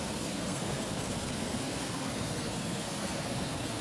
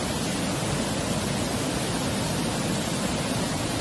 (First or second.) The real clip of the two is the second